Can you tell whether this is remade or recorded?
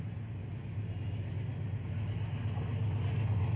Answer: recorded